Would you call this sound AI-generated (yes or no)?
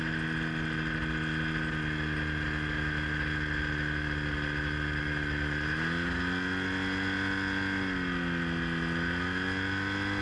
no